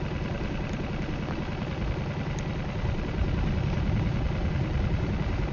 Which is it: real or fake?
real